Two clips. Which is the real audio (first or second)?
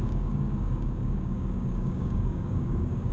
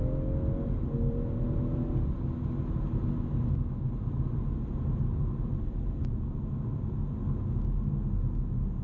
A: second